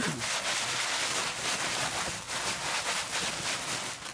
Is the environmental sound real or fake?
real